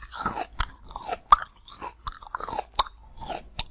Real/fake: real